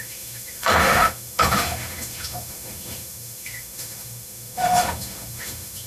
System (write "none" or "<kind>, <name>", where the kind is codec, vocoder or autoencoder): autoencoder, DAC-VAE